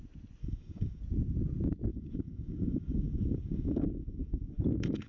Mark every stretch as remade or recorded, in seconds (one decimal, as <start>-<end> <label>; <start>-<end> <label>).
0.0-0.4 recorded; 0.4-1.0 remade; 1.0-1.9 recorded; 1.9-5.1 remade